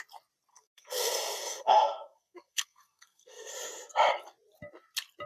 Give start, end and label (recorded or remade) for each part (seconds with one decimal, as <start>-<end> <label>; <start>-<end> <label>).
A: 0.0-0.5 recorded; 0.5-3.5 remade; 3.5-5.3 recorded